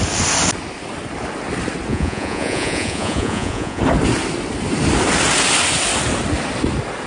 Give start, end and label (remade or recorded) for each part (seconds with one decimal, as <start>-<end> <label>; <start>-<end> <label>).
0.0-1.9 recorded; 1.9-3.8 remade; 3.8-7.1 recorded